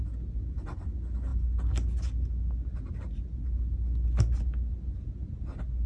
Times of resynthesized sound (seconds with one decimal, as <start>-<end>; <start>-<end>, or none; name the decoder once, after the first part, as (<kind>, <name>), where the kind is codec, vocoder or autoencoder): none

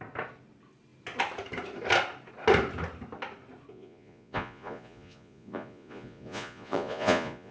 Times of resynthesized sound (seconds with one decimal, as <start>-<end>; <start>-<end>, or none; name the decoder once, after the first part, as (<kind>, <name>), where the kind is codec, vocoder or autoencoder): 3.7-7.5 (vocoder, Vocos)

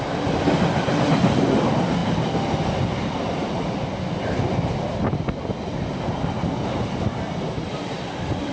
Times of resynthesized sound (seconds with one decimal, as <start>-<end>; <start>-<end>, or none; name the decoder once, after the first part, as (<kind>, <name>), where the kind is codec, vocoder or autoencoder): none

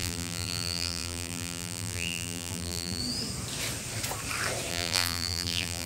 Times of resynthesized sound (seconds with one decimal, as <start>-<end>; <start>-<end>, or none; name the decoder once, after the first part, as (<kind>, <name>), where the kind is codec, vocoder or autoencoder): 0.0-3.0 (vocoder, BigVGAN v2); 4.7-5.9